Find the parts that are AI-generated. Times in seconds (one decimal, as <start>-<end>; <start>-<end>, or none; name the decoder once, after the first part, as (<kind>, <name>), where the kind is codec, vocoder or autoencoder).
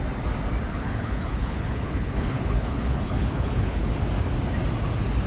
0.7-3.9 (codec, HILCodec)